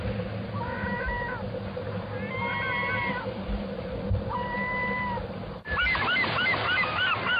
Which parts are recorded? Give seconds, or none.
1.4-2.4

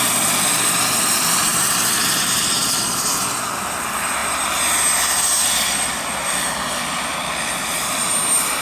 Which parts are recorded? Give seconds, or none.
0.0-1.5; 3.0-8.6

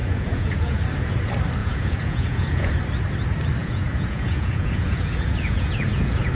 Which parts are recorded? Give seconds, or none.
0.8-1.6; 2.7-3.6

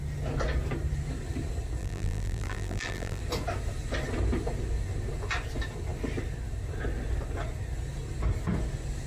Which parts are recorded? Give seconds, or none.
0.0-1.8; 3.2-9.1

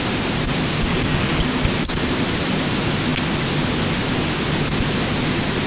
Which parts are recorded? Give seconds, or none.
0.0-0.9; 1.4-5.7